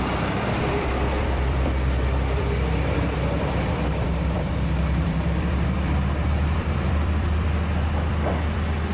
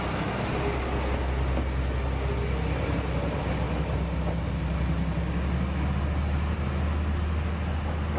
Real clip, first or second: second